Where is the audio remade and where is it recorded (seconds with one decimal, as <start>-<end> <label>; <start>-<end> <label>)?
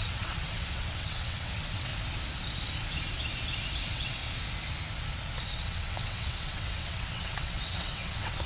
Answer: 0.0-1.9 remade; 1.9-3.8 recorded; 3.8-4.2 remade; 4.2-5.5 recorded; 5.5-8.5 remade